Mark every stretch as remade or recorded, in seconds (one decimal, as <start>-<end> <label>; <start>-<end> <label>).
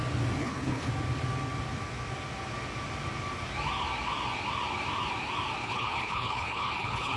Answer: 0.0-0.4 recorded; 0.4-0.9 remade; 0.9-5.6 recorded; 5.6-7.2 remade